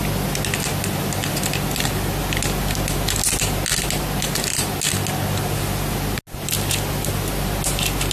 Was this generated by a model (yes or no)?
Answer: no